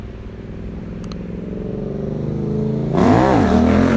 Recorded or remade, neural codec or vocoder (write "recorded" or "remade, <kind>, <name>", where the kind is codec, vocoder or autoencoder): recorded